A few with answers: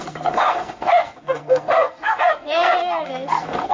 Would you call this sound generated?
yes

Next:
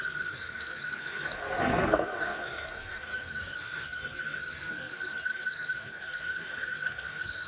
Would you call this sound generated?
yes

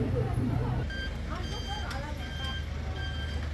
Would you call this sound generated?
no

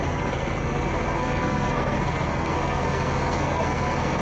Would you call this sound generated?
yes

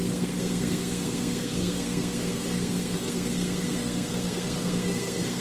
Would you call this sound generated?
yes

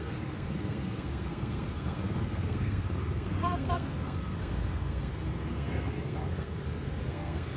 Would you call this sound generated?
yes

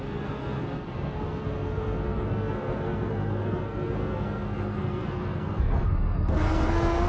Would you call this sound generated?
yes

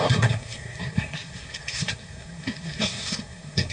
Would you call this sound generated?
yes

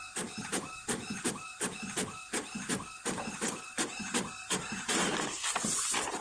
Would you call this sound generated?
no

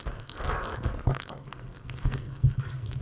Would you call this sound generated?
yes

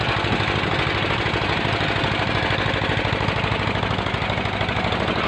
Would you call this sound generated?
no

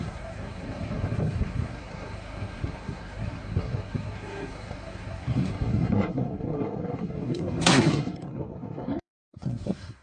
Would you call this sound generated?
yes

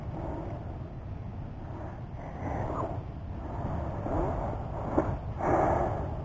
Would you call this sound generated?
no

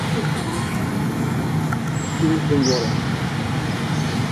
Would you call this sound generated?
no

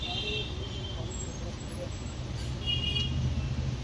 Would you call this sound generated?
no